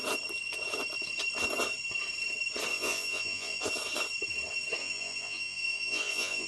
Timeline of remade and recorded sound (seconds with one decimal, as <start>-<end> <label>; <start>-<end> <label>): 0.0-2.7 recorded; 2.7-3.6 remade; 3.6-4.8 recorded; 4.8-6.5 remade